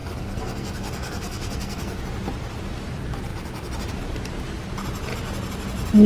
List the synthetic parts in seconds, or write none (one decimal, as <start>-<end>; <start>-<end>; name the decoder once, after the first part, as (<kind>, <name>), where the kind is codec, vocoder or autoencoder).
0.0-2.0 (codec, SNAC)